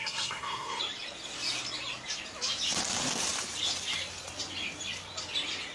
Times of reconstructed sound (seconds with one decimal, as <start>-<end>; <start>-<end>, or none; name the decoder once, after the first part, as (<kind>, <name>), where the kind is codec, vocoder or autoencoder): 0.0-0.8 (codec, SNAC)